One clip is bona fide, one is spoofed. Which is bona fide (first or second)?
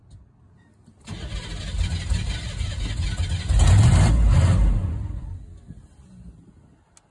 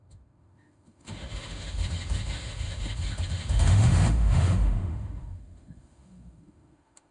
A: first